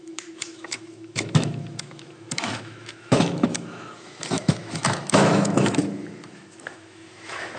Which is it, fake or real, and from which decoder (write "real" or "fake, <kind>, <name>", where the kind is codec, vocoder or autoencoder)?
fake, autoencoder, DAC-VAE